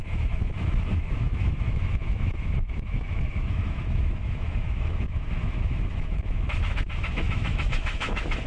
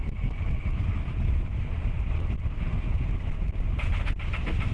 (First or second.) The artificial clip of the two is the first